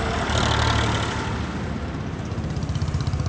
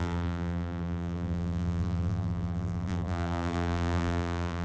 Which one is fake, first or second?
second